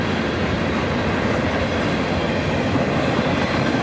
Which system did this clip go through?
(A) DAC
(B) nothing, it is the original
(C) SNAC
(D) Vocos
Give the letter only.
B